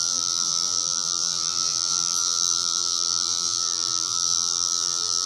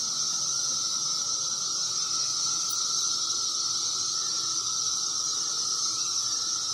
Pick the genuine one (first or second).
second